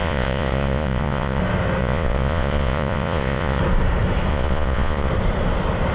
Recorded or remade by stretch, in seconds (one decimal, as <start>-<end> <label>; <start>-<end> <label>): 0.0-1.4 remade; 1.4-1.8 recorded; 1.8-3.6 remade; 3.6-4.3 recorded; 4.3-5.1 remade; 5.1-5.9 recorded